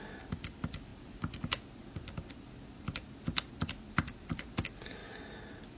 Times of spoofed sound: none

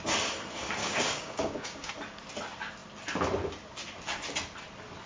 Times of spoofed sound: 0.8-1.9 (codec, DAC)

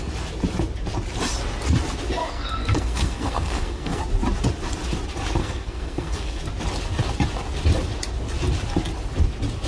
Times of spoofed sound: 2.2-4.0 (codec, SNAC); 5.4-6.4

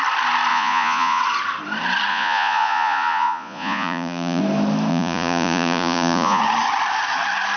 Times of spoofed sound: 0.5-1.2 (vocoder, Vocos); 2.1-4.4; 4.9-6.4

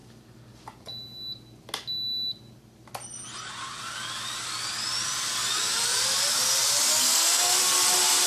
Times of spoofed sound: 7.0-7.6 (codec, SNAC)